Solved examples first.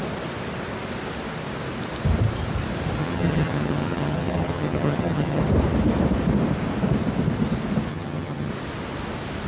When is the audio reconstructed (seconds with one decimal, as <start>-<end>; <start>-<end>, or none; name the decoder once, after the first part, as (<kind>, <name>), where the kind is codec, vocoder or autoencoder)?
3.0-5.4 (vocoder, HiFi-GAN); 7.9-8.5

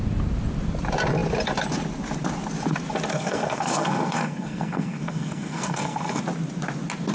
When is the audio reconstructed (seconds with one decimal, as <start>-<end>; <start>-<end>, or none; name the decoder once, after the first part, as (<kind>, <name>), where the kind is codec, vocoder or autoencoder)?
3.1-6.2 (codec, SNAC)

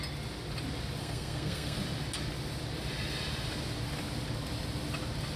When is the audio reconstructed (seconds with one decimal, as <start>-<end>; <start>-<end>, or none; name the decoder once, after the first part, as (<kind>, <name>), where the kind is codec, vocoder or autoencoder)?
1.0-1.8 (codec, SNAC)

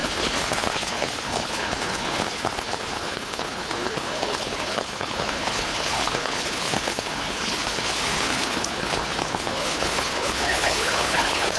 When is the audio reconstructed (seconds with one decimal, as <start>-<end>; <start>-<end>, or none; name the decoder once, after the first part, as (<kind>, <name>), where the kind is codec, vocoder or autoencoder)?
0.0-11.6 (codec, HILCodec)

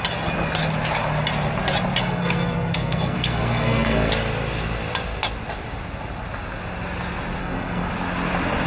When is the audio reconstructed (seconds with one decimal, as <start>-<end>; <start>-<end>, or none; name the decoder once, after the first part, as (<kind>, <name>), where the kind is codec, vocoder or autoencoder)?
2.0-4.1 (codec, SNAC); 7.4-7.9

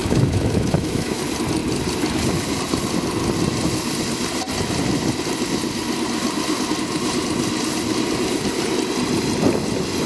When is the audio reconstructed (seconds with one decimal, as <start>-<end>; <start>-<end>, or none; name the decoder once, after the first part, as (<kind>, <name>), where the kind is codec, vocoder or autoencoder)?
0.0-1.2 (autoencoder, DAC-VAE)

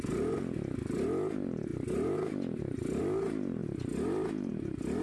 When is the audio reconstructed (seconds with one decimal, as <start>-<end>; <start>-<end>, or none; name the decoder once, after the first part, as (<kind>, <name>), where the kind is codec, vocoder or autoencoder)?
none